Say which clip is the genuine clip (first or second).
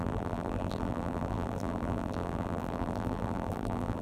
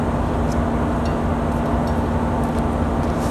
second